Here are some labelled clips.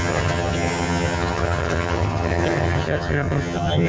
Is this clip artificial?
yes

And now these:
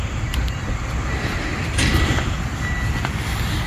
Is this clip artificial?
no